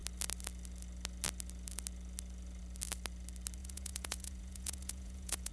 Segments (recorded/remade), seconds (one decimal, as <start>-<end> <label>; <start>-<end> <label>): 0.0-3.6 recorded; 3.6-5.5 remade